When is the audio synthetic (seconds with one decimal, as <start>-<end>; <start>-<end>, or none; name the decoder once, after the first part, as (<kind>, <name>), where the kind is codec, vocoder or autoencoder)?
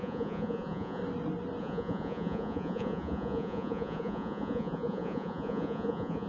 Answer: 0.0-1.0 (vocoder, Vocos); 1.6-6.3